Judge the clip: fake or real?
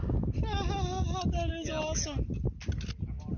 real